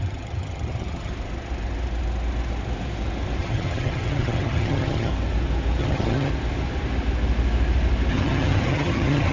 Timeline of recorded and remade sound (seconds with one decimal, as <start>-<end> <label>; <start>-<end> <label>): 0.0-1.1 remade; 1.1-3.4 recorded; 3.4-5.1 remade; 5.1-5.8 recorded; 5.8-6.3 remade; 6.3-8.1 recorded; 8.1-9.3 remade